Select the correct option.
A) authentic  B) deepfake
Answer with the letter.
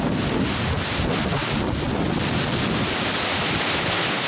A